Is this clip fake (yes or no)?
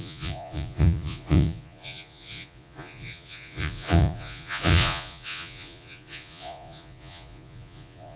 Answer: yes